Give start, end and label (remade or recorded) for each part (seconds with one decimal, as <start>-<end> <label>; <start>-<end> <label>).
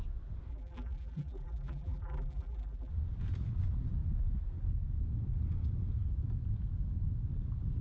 0.0-0.5 recorded; 0.5-2.9 remade; 2.9-7.8 recorded